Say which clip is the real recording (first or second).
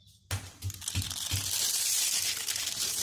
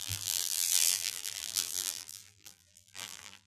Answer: first